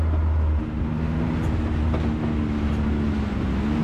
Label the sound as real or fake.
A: real